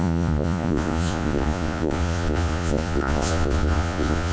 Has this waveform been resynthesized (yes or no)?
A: yes